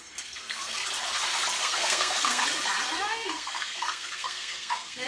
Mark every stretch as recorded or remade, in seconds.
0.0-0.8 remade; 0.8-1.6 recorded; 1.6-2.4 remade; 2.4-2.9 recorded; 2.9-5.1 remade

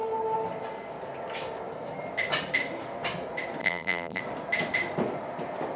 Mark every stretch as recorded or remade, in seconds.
0.0-3.6 recorded; 3.6-4.2 remade; 4.2-5.8 recorded

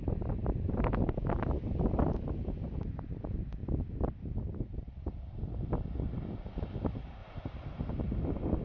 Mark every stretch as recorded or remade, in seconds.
0.0-0.4 remade; 0.4-1.7 recorded; 1.7-3.6 remade; 3.6-4.4 recorded; 4.4-8.6 remade

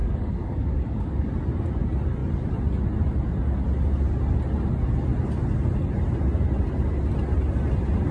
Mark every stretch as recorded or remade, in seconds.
0.0-1.3 remade; 1.3-8.1 recorded

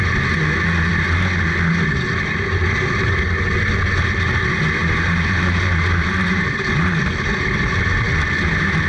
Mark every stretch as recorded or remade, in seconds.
0.0-4.8 recorded; 4.8-6.8 remade; 6.8-8.9 recorded

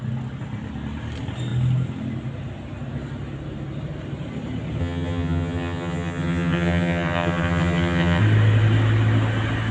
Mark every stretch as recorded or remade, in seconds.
0.0-4.8 recorded; 4.8-8.2 remade; 8.2-9.7 recorded

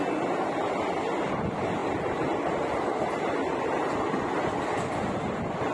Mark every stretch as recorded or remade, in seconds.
0.0-5.7 recorded